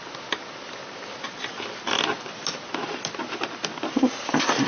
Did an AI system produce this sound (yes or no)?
no